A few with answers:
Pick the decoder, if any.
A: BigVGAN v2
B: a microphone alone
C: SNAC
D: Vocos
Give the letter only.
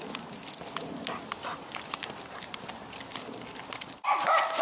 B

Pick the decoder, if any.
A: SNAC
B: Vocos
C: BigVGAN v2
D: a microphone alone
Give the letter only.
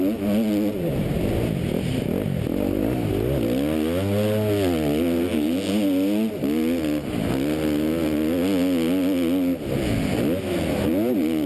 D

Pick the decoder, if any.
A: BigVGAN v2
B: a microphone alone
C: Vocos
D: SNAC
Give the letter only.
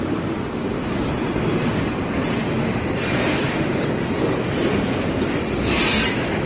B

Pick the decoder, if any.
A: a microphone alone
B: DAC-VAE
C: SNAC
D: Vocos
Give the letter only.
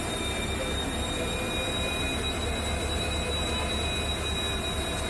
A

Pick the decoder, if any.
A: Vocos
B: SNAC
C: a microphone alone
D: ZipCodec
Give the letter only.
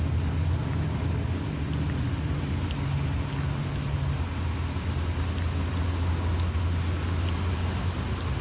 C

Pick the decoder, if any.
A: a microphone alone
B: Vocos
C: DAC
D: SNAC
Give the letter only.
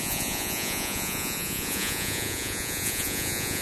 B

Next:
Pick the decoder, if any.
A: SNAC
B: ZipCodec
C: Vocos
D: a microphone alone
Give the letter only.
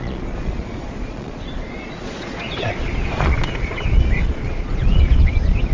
C